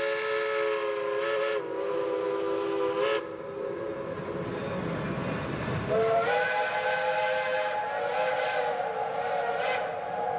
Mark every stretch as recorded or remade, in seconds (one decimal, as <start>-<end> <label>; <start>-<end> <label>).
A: 0.0-5.2 recorded; 5.2-6.5 remade; 6.5-10.4 recorded